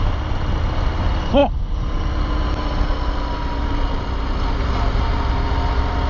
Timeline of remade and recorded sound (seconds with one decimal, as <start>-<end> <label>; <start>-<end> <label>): 0.0-6.1 recorded